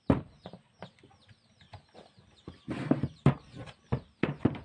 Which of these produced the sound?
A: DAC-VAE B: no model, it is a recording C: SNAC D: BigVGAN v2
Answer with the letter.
D